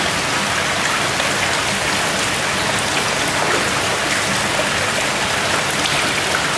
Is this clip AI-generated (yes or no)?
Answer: no